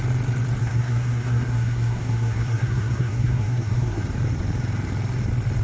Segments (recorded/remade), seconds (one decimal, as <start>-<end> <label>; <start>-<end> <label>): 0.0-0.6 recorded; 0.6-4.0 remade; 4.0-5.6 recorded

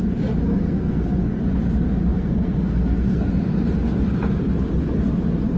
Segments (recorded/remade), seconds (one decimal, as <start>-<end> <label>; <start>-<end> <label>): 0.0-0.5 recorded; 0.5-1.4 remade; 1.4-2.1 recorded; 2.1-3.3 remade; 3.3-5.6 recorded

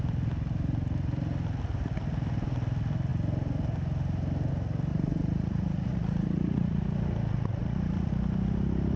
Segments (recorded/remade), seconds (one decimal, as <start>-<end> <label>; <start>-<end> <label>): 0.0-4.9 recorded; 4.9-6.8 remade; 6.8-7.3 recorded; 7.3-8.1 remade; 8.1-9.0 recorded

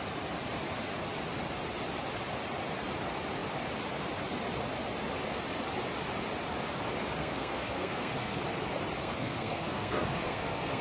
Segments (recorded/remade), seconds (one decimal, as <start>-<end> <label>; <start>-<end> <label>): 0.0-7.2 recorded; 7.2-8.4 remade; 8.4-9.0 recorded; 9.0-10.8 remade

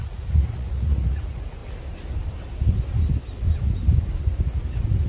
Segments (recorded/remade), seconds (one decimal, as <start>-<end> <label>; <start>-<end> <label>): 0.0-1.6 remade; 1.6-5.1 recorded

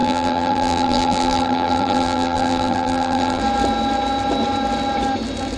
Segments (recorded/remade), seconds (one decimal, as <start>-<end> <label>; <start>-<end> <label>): 0.0-3.4 remade; 3.4-5.6 recorded

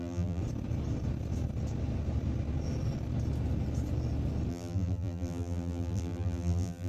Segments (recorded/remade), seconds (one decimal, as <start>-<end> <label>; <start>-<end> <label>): 0.0-0.4 remade; 0.4-4.5 recorded; 4.5-6.9 remade

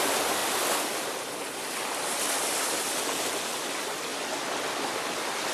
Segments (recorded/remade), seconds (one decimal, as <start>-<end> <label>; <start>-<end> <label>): 0.0-0.4 recorded; 0.4-1.5 remade; 1.5-5.5 recorded